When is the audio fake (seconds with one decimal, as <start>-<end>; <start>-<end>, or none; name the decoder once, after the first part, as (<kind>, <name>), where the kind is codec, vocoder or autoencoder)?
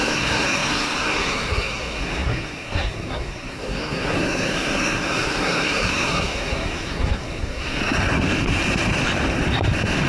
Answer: 0.0-7.8 (codec, SNAC)